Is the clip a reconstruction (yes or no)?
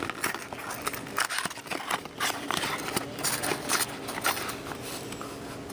no